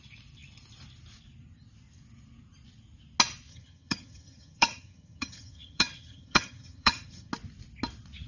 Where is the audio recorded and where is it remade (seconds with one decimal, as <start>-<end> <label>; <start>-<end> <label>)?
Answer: 0.0-3.5 recorded; 3.5-7.3 remade; 7.3-8.3 recorded